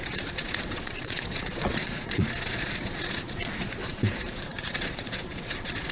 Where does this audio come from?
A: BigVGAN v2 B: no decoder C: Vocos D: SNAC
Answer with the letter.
C